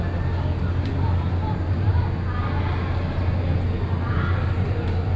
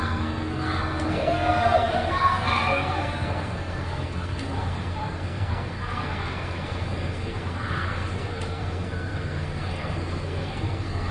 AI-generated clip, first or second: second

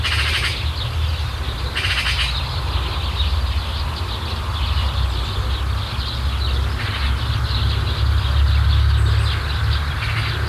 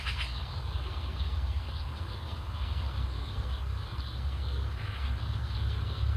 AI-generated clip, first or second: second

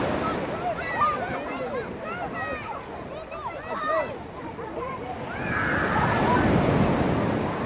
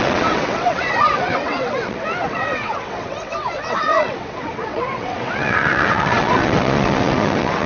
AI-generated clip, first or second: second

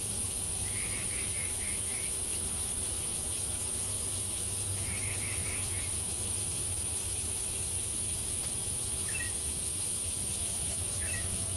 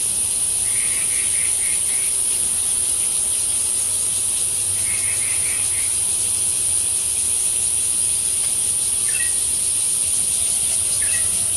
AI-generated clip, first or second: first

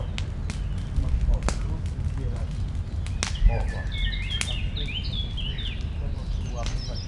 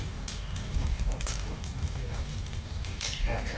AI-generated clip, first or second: second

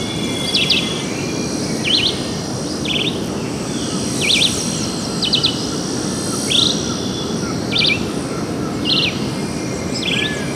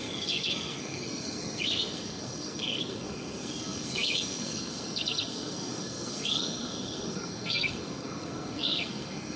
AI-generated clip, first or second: second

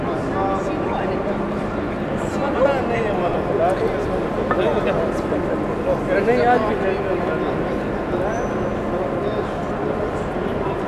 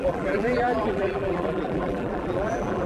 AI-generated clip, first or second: second